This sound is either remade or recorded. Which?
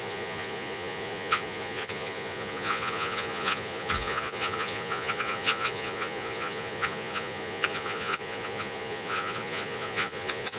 remade